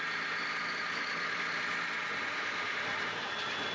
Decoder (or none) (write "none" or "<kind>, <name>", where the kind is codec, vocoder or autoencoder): none